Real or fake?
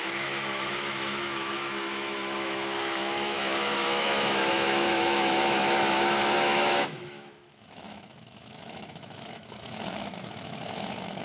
fake